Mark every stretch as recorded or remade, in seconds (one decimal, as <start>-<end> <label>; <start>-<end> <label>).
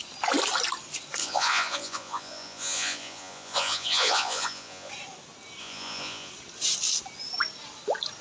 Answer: 0.0-1.2 recorded; 1.2-4.9 remade; 4.9-5.6 recorded; 5.6-6.3 remade; 6.3-8.2 recorded